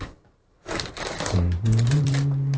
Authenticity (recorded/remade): remade